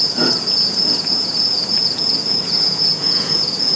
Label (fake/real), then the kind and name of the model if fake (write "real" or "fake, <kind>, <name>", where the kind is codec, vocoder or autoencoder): fake, vocoder, Vocos